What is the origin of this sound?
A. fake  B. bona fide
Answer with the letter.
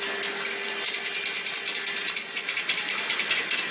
B